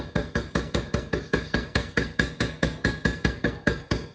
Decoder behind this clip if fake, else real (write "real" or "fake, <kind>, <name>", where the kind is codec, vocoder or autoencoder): fake, codec, SNAC